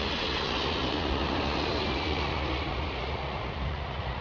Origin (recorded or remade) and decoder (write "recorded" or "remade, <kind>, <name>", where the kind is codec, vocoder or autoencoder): remade, vocoder, Vocos